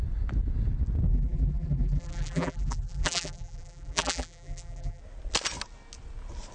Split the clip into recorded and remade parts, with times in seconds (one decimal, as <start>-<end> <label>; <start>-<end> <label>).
0.0-1.1 recorded; 1.1-5.0 remade; 5.0-6.5 recorded